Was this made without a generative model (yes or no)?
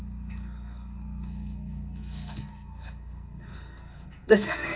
no